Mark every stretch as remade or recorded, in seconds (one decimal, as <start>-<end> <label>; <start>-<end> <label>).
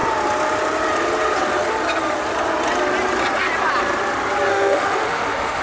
0.0-4.5 recorded; 4.5-5.6 remade